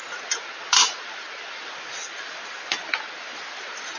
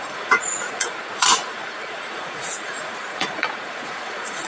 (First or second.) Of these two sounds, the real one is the first